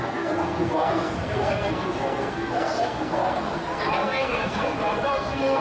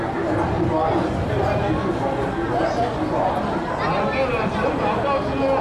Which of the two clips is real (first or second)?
second